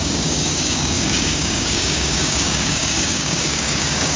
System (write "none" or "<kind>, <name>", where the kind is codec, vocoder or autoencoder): codec, DAC